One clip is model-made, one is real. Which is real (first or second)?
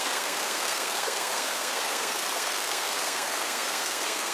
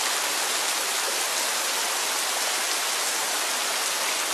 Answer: second